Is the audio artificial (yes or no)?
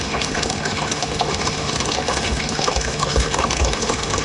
yes